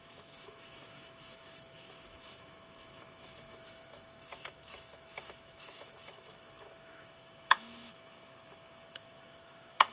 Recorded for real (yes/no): no